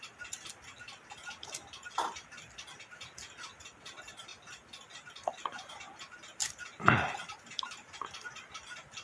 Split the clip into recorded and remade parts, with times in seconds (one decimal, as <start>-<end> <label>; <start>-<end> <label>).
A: 0.0-9.0 remade